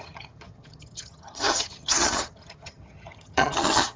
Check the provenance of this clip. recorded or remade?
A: remade